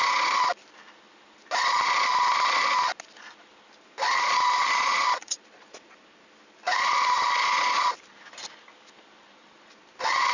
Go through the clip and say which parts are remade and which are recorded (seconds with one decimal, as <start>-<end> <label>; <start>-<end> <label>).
0.0-4.8 recorded; 4.8-5.8 remade; 5.8-10.3 recorded